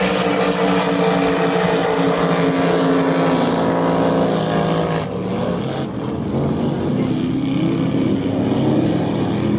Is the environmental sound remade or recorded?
recorded